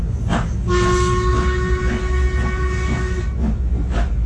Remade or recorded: recorded